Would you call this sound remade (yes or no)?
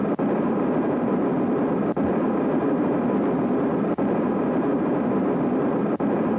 yes